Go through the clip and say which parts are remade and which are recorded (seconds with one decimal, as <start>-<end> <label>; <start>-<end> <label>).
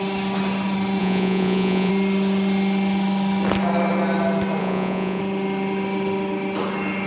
0.0-1.0 recorded; 1.0-1.9 remade; 1.9-4.6 recorded; 4.6-5.2 remade; 5.2-7.1 recorded